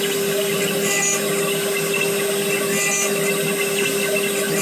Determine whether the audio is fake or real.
real